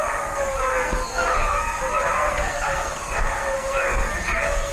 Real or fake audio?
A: fake